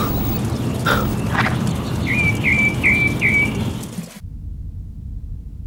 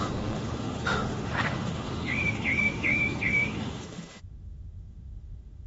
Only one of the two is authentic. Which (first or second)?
first